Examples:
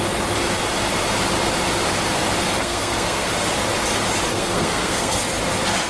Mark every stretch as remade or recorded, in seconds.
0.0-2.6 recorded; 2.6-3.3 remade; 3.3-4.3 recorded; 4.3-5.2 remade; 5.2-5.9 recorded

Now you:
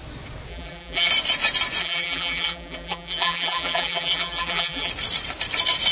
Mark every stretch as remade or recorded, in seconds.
0.0-0.5 recorded; 0.5-1.1 remade; 1.1-1.8 recorded; 1.8-4.9 remade; 4.9-5.9 recorded

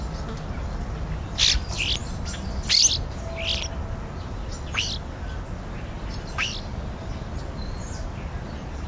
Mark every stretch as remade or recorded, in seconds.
0.0-8.9 recorded